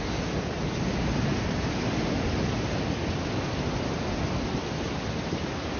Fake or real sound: real